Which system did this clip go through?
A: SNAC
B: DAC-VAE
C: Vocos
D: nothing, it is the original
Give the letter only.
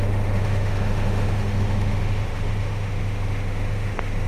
B